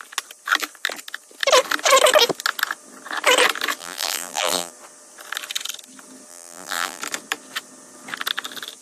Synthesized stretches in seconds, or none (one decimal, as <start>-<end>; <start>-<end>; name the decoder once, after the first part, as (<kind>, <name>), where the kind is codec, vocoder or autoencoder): 3.8-4.7 (vocoder, BigVGAN v2); 6.3-7.0